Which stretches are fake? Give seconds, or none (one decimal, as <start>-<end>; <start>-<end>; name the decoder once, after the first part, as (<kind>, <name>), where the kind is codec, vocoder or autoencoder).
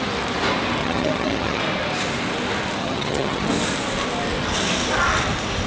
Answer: 0.8-1.6 (vocoder, HiFi-GAN); 2.8-3.5